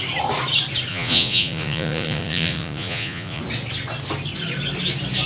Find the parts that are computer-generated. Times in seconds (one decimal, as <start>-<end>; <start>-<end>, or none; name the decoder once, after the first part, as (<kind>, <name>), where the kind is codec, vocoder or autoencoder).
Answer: 0.9-3.4 (vocoder, Vocos)